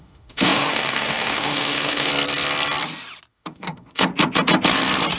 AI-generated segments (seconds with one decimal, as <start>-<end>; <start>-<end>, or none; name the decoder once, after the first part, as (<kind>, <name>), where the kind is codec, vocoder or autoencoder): 0.0-2.1 (autoencoder, DAC-VAE); 3.3-4.1